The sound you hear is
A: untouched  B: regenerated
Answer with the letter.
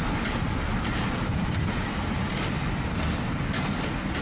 A